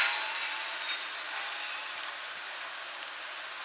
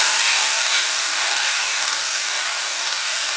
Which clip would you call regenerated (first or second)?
second